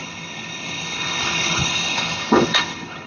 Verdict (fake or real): fake